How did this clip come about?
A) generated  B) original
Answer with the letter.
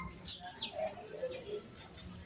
B